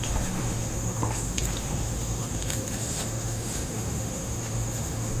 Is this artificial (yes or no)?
yes